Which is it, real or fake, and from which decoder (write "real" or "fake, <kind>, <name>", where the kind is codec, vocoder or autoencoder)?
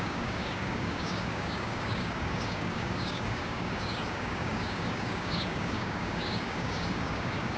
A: fake, codec, DAC